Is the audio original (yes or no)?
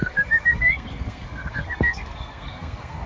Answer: no